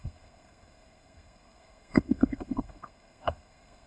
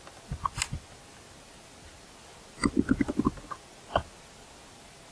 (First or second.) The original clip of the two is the second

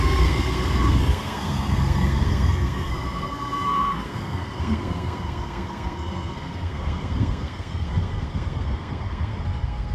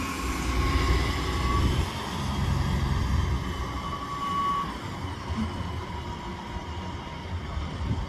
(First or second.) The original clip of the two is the second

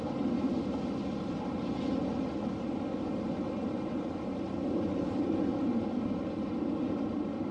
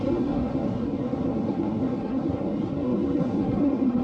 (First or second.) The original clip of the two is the first